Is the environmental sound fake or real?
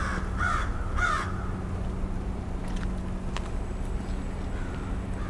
real